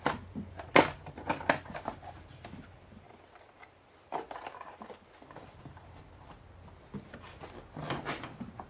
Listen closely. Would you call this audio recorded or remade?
recorded